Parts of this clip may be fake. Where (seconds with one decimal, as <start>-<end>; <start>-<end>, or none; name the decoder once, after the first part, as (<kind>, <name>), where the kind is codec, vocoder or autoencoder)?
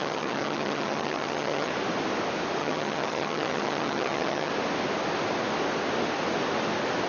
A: 0.0-1.7 (vocoder, HiFi-GAN); 2.6-4.5